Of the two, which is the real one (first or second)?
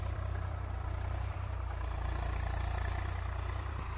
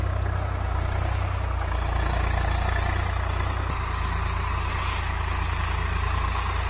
second